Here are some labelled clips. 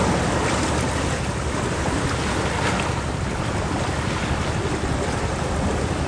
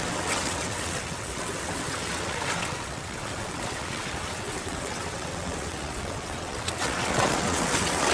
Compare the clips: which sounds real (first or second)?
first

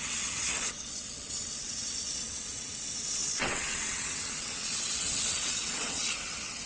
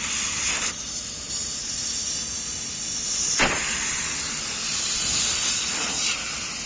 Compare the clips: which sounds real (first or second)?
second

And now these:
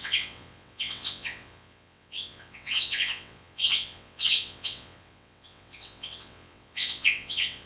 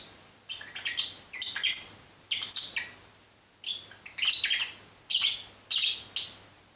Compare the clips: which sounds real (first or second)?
second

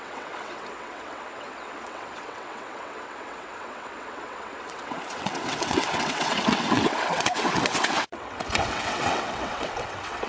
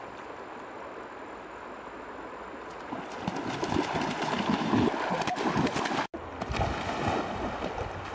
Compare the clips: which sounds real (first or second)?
second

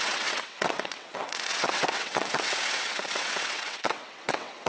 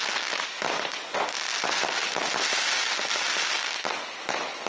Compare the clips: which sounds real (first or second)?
second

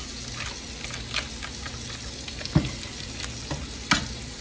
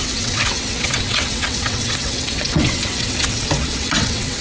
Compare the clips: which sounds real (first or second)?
first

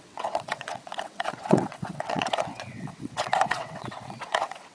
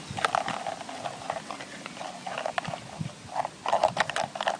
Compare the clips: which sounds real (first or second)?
second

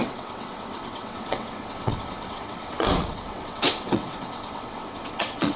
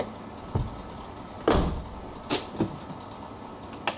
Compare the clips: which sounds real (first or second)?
second